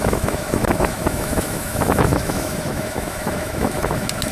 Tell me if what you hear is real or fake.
fake